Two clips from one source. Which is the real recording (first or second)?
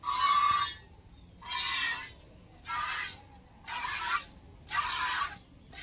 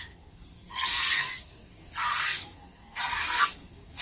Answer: first